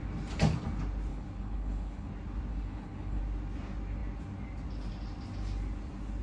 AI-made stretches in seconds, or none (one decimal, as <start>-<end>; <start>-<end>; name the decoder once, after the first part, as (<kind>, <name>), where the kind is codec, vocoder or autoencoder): 1.1-2.1 (codec, HILCodec); 2.5-3.2